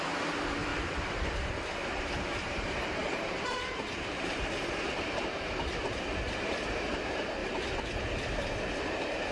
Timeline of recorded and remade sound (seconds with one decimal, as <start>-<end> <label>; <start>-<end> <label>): 0.0-0.7 remade; 0.7-2.3 recorded; 2.3-7.4 remade; 7.4-8.8 recorded; 8.8-9.3 remade